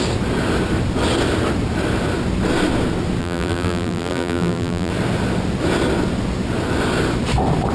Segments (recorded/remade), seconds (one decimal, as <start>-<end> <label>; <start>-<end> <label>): 0.0-3.2 recorded; 3.2-4.9 remade; 4.9-7.7 recorded